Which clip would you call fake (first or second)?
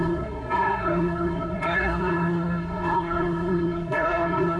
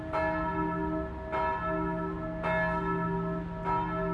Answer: first